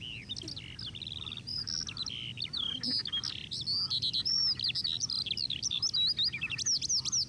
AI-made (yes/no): no